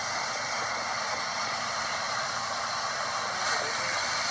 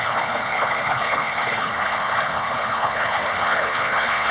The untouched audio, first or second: first